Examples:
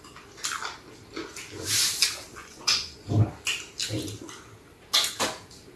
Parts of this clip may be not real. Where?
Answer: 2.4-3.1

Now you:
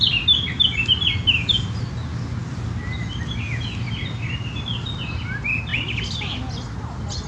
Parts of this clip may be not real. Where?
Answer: none